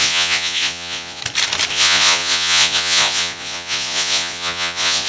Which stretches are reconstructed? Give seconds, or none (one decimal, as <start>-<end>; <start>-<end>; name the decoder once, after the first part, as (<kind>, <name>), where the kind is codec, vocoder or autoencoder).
0.0-1.2 (vocoder, Vocos); 1.7-5.1